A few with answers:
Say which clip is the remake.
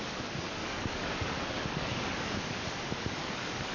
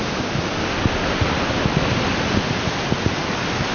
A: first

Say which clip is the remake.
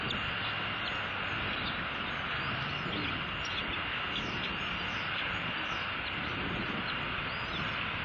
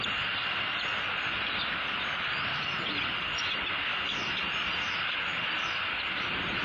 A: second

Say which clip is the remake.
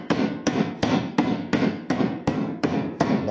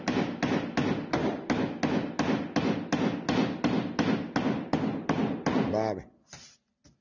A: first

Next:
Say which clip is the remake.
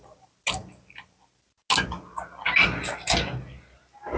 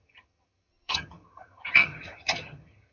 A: second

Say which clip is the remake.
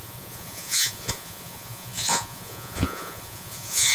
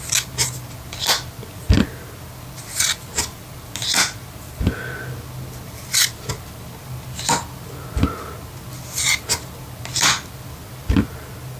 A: first